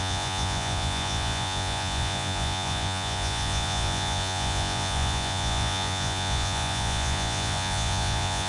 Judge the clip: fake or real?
fake